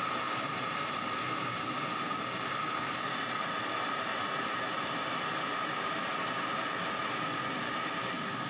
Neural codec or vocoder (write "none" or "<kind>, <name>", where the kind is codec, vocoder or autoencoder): none